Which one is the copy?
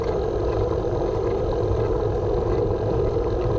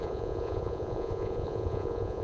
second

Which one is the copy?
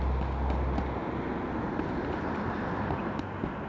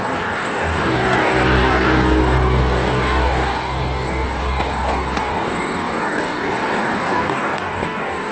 second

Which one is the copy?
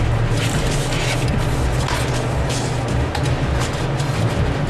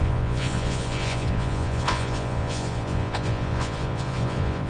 second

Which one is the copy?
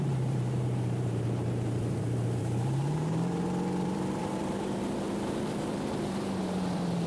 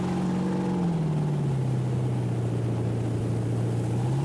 first